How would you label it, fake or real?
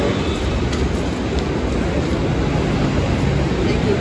real